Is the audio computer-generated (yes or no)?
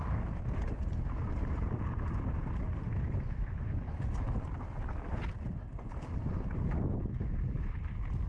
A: no